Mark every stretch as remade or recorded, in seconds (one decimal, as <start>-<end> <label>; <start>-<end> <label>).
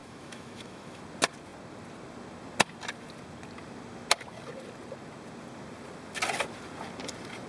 0.0-1.0 remade; 1.0-7.5 recorded